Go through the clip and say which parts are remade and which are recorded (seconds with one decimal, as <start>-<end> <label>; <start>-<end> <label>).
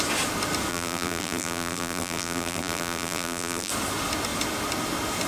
0.0-0.7 recorded; 0.7-3.7 remade; 3.7-5.3 recorded